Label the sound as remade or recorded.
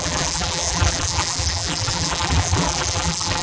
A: remade